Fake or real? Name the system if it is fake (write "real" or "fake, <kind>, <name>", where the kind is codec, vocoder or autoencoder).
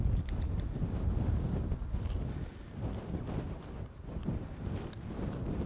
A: real